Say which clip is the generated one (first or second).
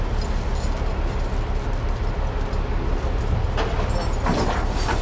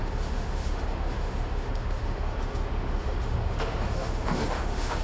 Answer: second